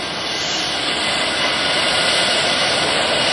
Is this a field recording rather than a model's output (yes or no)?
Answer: yes